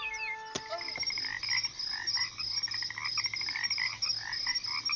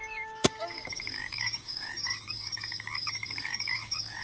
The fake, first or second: second